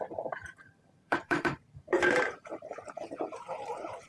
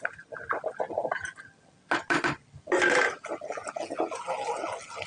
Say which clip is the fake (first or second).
first